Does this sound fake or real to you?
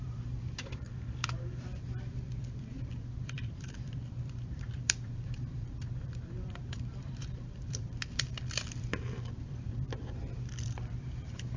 fake